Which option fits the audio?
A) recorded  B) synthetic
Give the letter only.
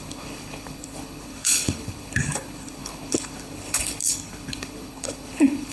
B